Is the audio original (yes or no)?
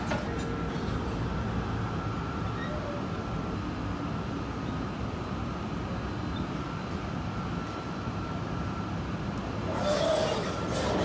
yes